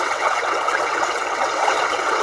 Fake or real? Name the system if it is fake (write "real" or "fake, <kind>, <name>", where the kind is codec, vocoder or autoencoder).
fake, vocoder, WaveNeXt